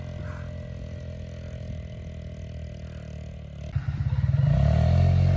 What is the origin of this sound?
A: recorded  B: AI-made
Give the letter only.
A